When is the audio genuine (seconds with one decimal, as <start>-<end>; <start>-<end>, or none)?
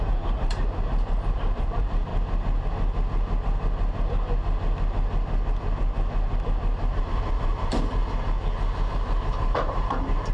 2.1-7.0; 8.0-8.9